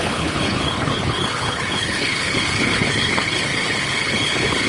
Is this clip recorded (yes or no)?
no